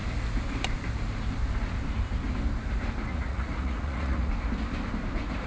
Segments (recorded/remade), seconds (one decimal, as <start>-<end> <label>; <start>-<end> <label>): 0.0-3.1 recorded; 3.1-4.3 remade; 4.3-5.5 recorded

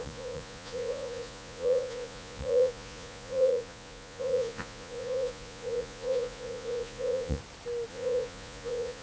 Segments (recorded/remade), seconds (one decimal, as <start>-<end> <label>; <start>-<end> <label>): 0.0-7.4 remade; 7.4-7.9 recorded; 7.9-9.0 remade

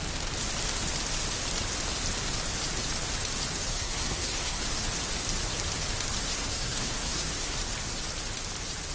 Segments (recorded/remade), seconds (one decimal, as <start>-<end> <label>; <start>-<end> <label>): 0.0-3.7 recorded; 3.7-4.6 remade; 4.6-6.2 recorded; 6.2-7.6 remade; 7.6-8.9 recorded

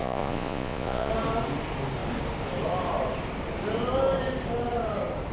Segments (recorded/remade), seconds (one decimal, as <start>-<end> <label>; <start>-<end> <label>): 0.0-1.1 remade; 1.1-5.3 recorded

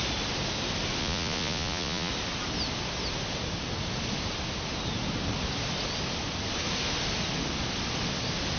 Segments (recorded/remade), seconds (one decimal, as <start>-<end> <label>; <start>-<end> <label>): 0.0-1.0 recorded; 1.0-2.1 remade; 2.1-8.6 recorded

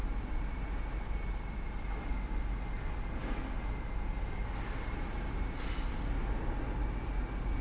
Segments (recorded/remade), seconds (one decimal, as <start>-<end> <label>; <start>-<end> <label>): 0.0-7.6 recorded